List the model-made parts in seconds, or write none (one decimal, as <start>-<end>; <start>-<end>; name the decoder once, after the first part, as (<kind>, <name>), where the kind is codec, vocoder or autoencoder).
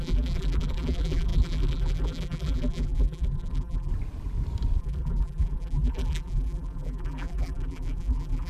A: 0.0-3.9 (vocoder, BigVGAN v2); 4.8-8.5